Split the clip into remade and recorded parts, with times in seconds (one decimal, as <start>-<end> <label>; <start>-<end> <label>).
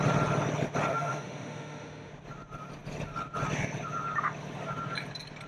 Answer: 0.0-0.9 recorded; 0.9-2.1 remade; 2.1-5.5 recorded